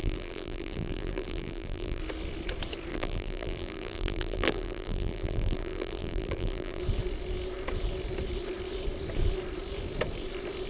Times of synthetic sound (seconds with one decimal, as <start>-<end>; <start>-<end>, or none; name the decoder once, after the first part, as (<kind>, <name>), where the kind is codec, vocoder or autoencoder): 0.0-2.0 (vocoder, BigVGAN v2); 2.9-6.8